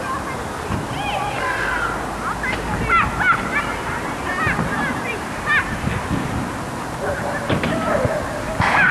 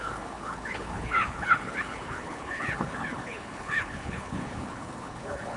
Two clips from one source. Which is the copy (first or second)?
second